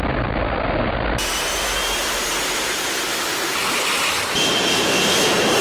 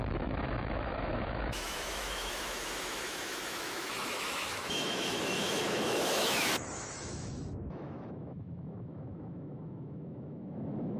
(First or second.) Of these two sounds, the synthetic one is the second